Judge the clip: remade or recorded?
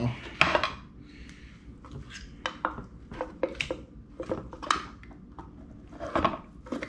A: recorded